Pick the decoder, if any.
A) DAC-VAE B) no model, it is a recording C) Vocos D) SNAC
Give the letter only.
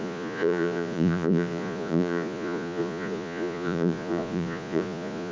C